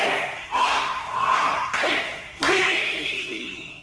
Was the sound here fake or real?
fake